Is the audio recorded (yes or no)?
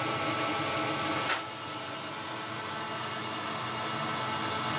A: yes